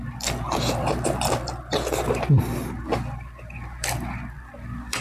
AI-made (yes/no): yes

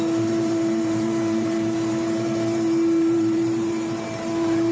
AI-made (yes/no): yes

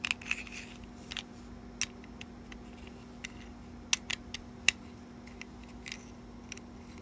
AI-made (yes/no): no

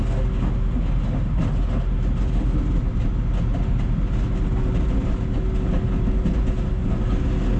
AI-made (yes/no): no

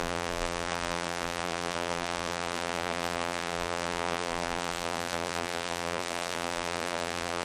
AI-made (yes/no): yes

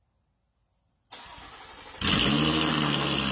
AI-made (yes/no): no